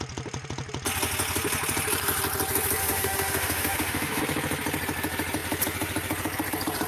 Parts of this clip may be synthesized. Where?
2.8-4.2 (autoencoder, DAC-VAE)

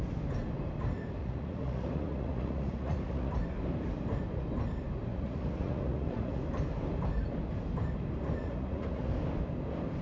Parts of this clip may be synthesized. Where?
1.2-3.3 (vocoder, Vocos); 5.1-6.4; 8.4-9.1

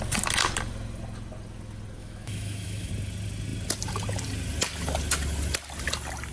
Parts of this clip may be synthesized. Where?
2.0-2.9 (autoencoder, DAC-VAE)